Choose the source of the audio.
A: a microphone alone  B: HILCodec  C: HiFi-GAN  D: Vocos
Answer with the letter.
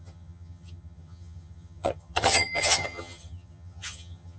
C